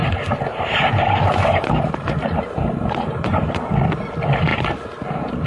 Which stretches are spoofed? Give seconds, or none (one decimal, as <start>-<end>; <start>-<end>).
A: 0.0-3.3